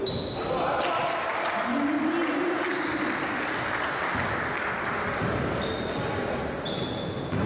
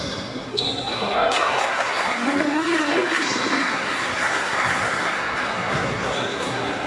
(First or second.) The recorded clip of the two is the first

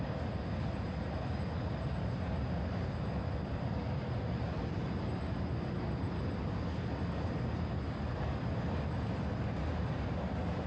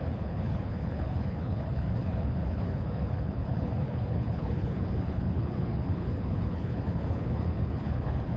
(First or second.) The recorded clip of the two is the first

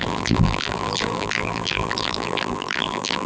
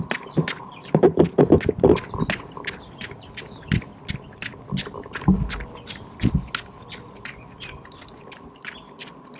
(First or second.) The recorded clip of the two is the second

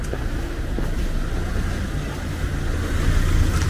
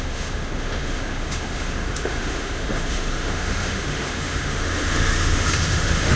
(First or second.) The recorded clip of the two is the first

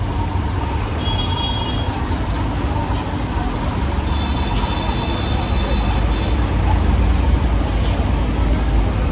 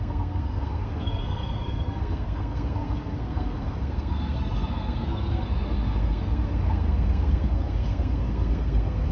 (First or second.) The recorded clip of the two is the first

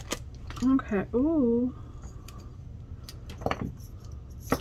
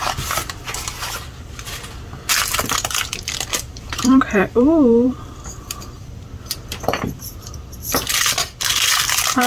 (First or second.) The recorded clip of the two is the first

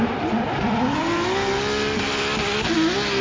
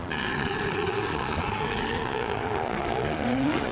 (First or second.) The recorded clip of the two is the first